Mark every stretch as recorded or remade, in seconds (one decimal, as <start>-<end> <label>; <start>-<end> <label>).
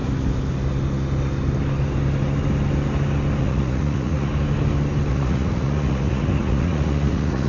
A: 0.0-3.4 recorded; 3.4-4.3 remade; 4.3-5.1 recorded; 5.1-7.5 remade